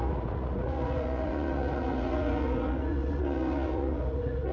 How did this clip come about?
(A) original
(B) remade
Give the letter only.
B